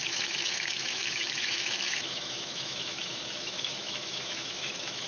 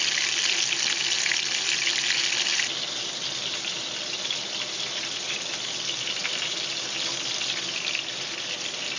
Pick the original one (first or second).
second